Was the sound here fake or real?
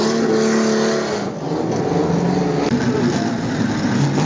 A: real